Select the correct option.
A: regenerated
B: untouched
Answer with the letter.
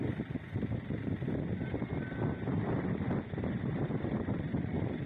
B